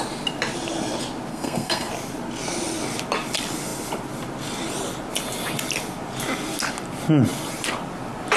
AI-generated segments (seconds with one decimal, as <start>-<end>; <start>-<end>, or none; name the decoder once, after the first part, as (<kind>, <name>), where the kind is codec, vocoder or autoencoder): 1.3-1.9 (codec, SNAC)